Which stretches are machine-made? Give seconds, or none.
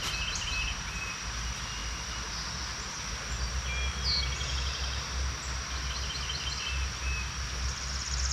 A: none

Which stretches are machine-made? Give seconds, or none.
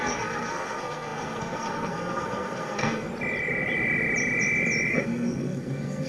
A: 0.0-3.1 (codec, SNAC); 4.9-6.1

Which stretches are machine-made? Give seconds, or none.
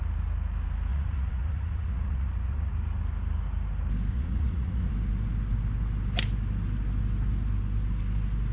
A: 0.9-2.7 (vocoder, Vocos); 4.1-4.9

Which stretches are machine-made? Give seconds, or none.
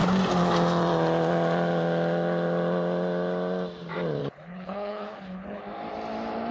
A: 4.2-5.6 (codec, HILCodec)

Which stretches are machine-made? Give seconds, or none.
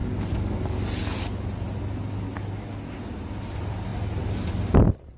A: none